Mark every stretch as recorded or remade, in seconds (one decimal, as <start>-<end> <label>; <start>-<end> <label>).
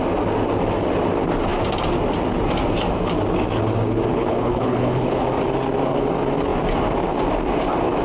0.0-4.1 recorded; 4.1-5.2 remade; 5.2-8.0 recorded